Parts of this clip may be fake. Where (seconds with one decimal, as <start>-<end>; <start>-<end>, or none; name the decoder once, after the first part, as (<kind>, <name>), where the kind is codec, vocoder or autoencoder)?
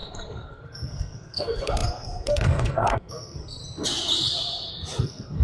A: 0.0-3.6 (codec, SNAC); 5.0-5.4